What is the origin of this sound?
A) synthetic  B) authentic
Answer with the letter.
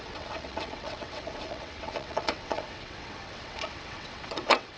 A